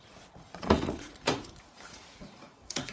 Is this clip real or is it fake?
fake